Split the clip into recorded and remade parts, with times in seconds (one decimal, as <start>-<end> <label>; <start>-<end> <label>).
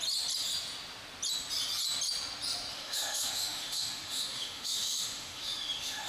0.0-2.7 recorded; 2.7-6.1 remade